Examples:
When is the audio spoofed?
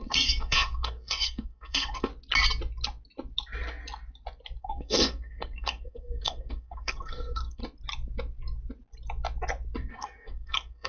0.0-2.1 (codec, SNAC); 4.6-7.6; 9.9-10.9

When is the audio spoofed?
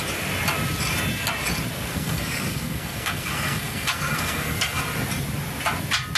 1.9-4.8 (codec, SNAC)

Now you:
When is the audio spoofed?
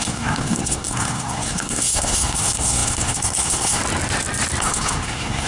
0.0-3.8 (codec, SNAC); 4.6-5.5